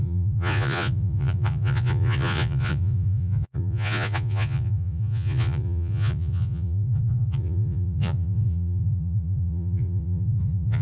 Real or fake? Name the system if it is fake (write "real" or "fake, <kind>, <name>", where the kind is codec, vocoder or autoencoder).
fake, vocoder, Vocos